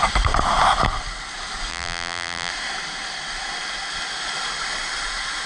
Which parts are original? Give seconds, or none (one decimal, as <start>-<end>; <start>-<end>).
0.0-1.7; 2.5-5.5